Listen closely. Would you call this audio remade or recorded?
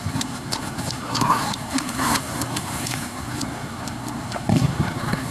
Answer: remade